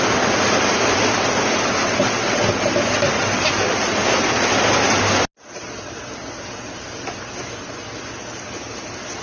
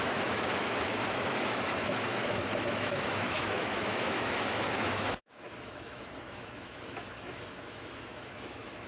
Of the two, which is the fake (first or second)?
second